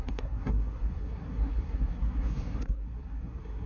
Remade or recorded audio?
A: remade